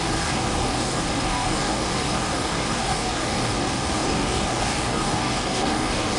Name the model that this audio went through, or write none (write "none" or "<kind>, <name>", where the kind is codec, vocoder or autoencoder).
codec, DAC